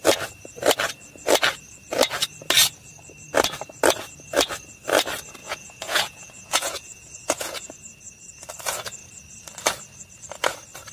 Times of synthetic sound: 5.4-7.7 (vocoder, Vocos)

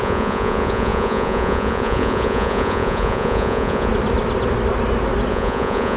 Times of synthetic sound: 0.0-3.9 (vocoder, Vocos); 5.3-6.0

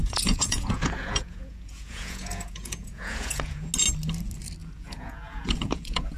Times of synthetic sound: 0.0-3.7 (vocoder, Vocos); 4.6-6.2

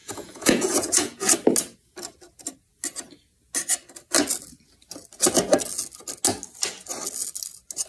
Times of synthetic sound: 0.0-1.3 (vocoder, Vocos)